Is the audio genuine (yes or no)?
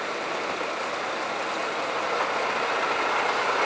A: yes